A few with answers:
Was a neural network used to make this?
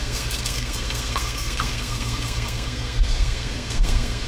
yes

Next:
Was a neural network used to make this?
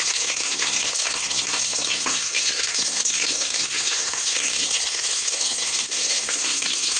yes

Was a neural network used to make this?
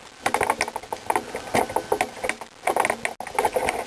no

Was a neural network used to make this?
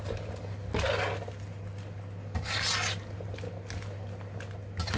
no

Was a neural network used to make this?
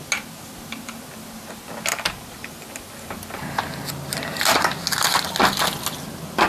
no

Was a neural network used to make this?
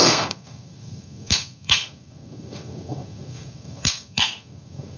yes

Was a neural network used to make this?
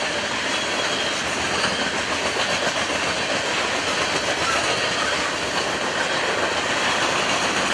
no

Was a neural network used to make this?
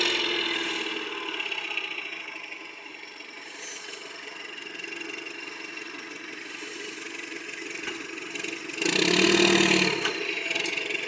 no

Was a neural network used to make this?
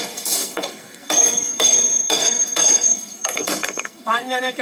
yes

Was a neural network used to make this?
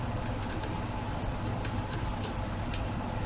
no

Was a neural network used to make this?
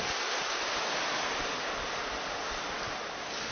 no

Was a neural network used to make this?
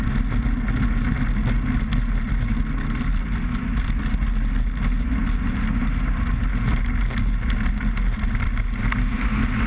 no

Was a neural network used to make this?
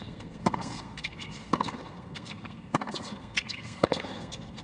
yes